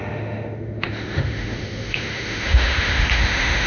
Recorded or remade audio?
remade